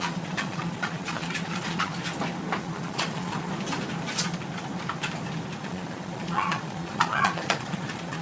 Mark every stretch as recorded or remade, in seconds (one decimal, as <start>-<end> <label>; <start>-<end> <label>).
0.0-1.9 remade; 1.9-2.6 recorded; 2.6-3.5 remade; 3.5-5.6 recorded; 5.6-8.2 remade